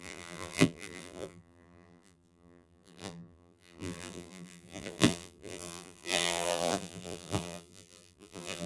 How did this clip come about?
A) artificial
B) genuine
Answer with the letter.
A